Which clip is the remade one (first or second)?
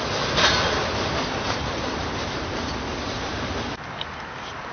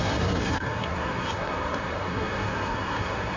second